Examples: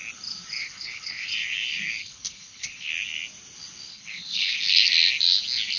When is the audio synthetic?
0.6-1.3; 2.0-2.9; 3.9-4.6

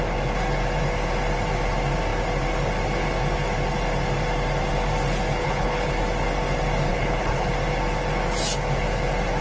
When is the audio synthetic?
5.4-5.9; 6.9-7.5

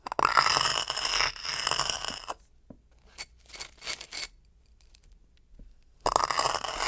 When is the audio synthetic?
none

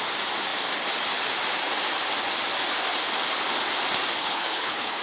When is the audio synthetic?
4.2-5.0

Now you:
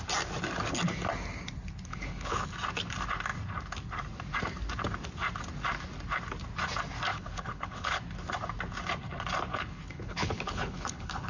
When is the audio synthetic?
1.9-2.5; 7.1-8.0; 9.5-11.3